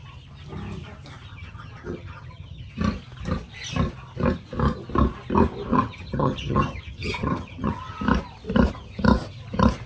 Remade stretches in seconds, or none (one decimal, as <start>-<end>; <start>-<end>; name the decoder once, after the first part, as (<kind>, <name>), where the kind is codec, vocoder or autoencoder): 1.3-2.7 (vocoder, HiFi-GAN); 5.7-8.0